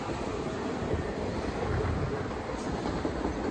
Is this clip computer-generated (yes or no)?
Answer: no